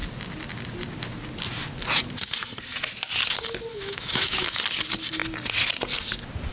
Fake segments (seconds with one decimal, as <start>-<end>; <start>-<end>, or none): 3.7-4.5